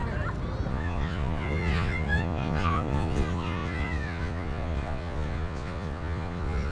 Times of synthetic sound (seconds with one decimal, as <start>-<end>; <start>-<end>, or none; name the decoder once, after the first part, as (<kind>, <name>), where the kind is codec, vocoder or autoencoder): 0.7-6.7 (vocoder, Vocos)